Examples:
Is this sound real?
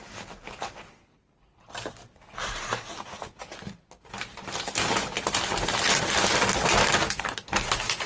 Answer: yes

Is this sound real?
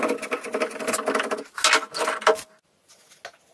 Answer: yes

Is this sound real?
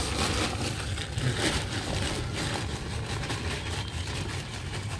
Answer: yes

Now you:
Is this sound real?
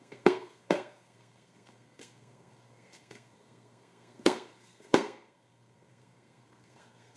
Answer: no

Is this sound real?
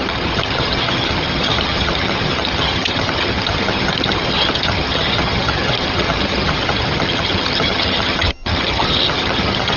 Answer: no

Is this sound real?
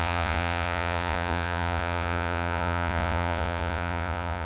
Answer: no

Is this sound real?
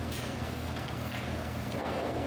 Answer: no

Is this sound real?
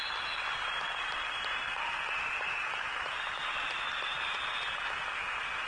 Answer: yes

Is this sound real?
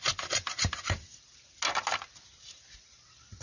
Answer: yes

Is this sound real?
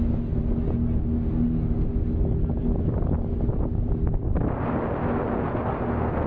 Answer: yes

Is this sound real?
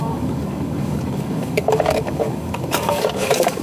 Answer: no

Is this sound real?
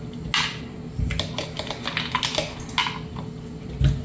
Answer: yes